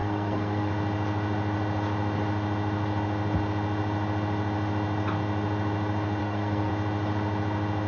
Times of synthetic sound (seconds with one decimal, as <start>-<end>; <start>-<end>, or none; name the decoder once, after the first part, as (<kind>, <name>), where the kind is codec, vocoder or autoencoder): 0.0-0.7 (codec, SNAC); 6.2-6.7